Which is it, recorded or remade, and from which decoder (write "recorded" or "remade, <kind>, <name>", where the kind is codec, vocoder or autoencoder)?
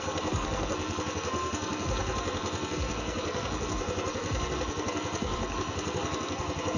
remade, codec, SNAC